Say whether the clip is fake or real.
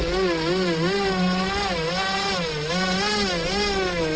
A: real